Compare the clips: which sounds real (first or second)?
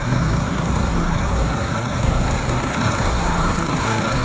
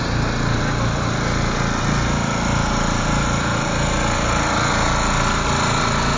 second